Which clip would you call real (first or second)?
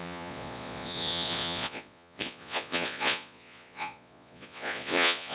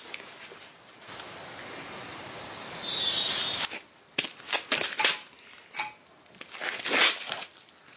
second